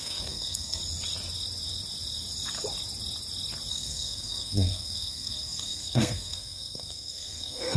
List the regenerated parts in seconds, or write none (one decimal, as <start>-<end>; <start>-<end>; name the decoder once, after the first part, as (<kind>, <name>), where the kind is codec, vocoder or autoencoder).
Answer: 0.0-0.8 (codec, SNAC); 3.7-7.8